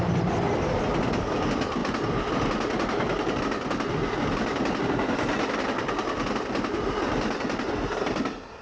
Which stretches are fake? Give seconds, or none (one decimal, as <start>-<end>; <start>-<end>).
none